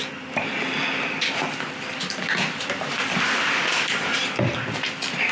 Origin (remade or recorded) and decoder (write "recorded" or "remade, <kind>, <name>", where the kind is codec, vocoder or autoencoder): remade, vocoder, BigVGAN v2